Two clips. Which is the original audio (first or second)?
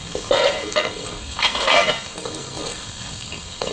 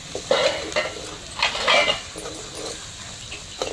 second